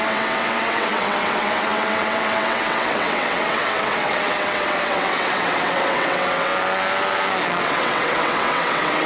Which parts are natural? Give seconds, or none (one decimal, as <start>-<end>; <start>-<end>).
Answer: 6.5-7.6